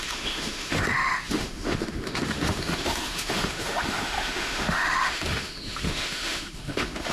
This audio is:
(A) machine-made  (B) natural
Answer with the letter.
A